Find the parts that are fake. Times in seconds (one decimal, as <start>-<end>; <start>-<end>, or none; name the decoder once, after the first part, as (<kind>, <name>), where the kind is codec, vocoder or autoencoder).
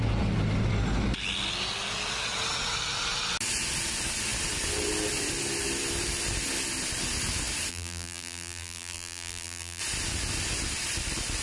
7.7-9.8 (vocoder, BigVGAN v2)